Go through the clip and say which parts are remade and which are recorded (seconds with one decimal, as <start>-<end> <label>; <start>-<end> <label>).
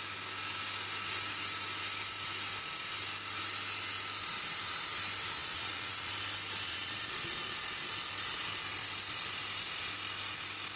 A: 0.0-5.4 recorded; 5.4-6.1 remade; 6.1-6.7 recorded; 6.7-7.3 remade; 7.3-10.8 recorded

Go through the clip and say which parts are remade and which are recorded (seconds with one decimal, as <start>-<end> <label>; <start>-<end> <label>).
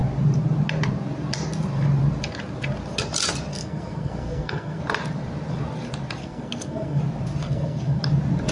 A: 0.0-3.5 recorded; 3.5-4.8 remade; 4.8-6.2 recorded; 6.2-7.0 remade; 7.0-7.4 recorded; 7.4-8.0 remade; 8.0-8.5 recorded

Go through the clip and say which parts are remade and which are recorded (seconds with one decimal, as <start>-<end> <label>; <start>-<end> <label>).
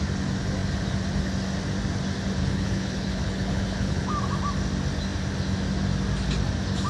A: 0.0-2.4 recorded; 2.4-4.1 remade; 4.1-6.9 recorded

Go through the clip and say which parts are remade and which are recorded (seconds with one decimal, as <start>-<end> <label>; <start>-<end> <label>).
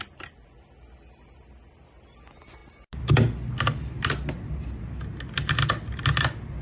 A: 0.0-6.6 recorded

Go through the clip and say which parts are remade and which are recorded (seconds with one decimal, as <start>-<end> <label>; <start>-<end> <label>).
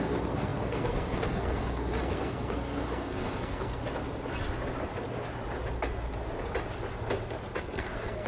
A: 0.0-3.8 remade; 3.8-7.6 recorded; 7.6-8.3 remade